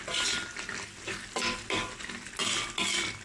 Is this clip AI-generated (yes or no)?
no